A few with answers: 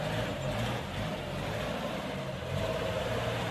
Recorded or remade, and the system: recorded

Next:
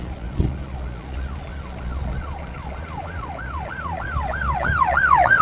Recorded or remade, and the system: remade, vocoder, Vocos